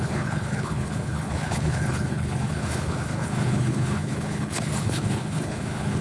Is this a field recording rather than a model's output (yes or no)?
no